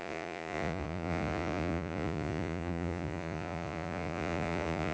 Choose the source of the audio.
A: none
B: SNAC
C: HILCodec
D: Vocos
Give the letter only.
D